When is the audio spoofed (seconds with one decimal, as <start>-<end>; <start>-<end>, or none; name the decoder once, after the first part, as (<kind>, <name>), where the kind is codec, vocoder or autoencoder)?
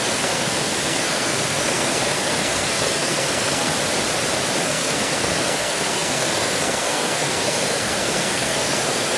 0.0-3.7 (codec, SNAC); 4.6-9.2